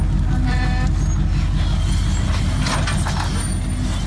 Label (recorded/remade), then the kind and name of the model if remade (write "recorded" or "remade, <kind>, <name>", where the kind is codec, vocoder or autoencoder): recorded